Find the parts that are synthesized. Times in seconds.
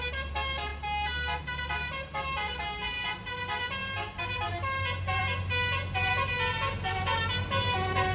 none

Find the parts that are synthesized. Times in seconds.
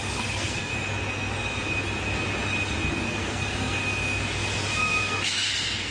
0.0-0.7 (codec, SNAC); 3.1-3.8; 4.7-5.9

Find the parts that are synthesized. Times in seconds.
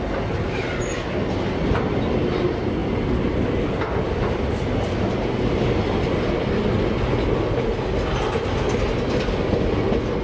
none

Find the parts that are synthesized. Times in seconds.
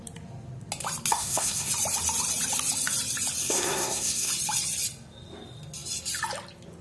1.1-1.7 (codec, SNAC); 3.4-4.3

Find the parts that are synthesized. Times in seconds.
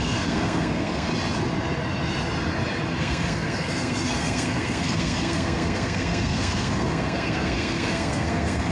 0.0-1.1 (codec, SNAC); 3.0-8.7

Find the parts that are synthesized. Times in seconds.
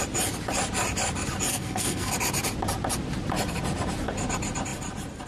1.5-2.1 (codec, SNAC)